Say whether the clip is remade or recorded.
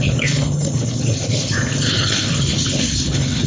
remade